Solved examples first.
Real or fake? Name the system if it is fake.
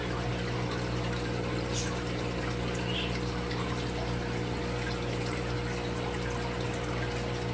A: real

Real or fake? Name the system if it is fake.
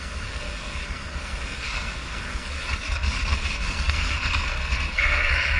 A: fake, codec, SNAC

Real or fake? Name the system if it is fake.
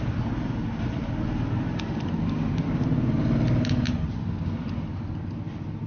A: real